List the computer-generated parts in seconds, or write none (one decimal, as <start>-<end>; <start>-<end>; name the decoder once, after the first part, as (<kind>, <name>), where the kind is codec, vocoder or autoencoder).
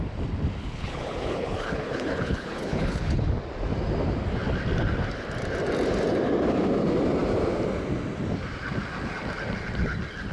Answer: 0.6-3.2 (codec, HILCodec)